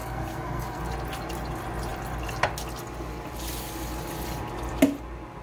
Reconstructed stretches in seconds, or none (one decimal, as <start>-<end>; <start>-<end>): 0.0-0.8